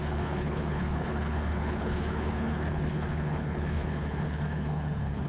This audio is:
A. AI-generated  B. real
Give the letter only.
A